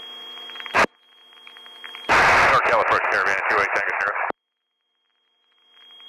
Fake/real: real